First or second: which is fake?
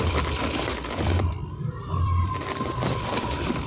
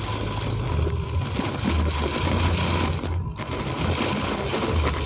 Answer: first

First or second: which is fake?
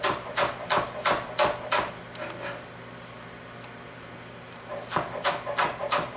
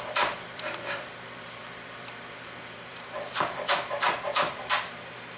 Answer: second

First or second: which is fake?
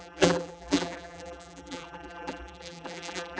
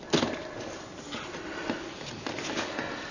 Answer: first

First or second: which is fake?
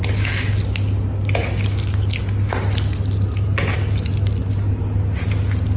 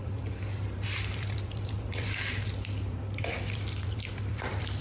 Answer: second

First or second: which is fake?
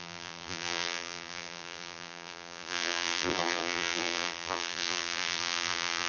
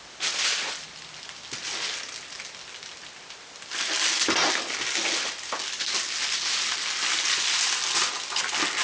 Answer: first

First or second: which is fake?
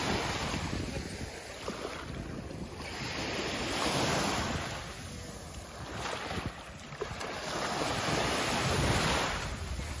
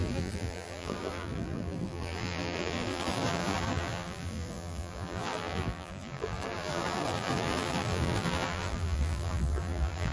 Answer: second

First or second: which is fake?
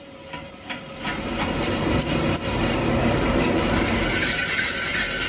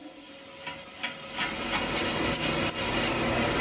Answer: first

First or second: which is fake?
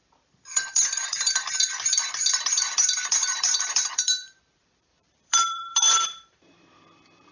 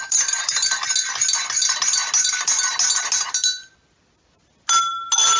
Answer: first